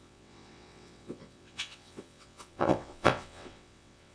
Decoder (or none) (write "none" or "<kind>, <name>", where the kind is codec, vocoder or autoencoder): vocoder, WaveNeXt